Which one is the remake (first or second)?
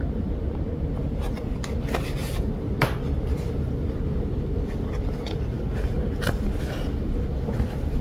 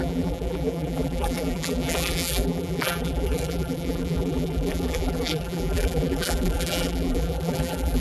second